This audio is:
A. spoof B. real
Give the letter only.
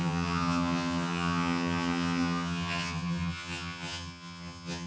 A